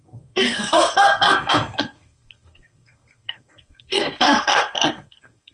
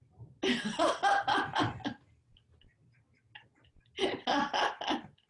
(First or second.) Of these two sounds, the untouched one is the second